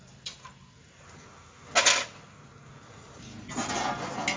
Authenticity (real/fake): real